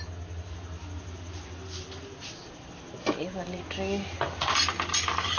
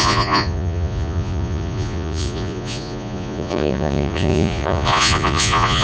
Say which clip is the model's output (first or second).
second